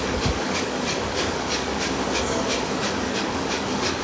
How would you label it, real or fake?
fake